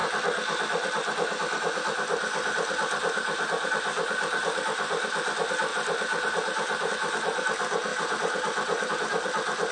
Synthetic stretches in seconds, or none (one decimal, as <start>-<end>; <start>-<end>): 5.7-6.9; 7.9-8.9